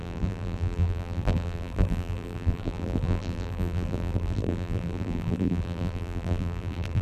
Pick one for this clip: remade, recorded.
remade